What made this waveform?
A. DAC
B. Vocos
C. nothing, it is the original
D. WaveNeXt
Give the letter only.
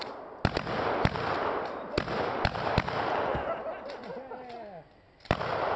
C